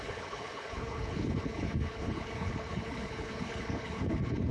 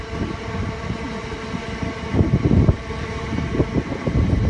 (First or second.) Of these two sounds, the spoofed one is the first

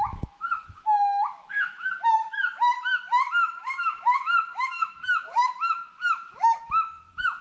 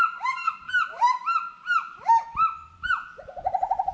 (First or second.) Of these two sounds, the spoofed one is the first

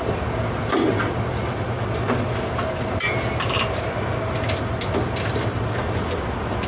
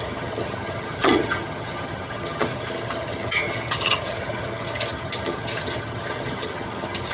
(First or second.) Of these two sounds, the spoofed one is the second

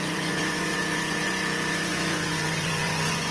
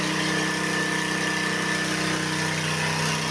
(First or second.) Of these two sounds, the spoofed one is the first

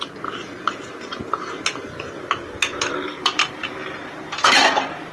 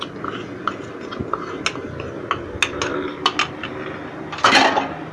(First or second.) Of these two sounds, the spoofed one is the first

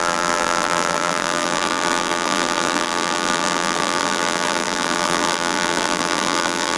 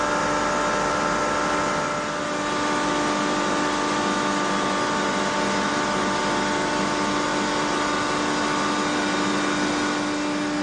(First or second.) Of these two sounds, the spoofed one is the first